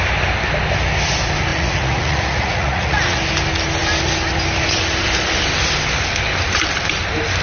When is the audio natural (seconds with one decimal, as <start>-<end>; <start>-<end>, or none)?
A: 0.0-1.5; 3.2-7.4